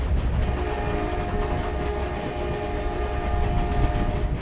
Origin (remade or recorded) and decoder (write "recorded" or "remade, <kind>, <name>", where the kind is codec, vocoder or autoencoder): recorded